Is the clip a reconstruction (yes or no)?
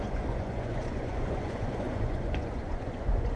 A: yes